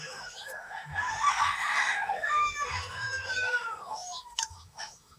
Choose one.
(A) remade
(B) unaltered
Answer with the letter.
A